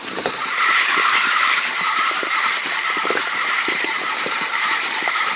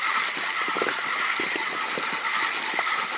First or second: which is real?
second